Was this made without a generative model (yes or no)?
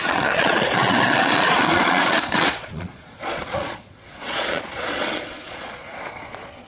no